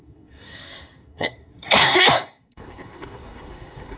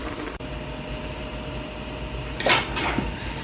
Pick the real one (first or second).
second